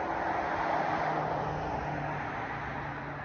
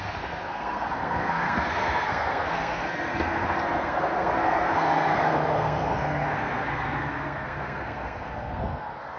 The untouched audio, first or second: first